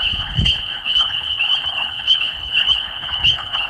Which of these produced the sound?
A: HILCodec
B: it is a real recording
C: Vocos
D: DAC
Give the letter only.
A